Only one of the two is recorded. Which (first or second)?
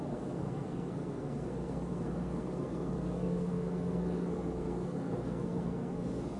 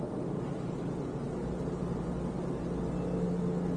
second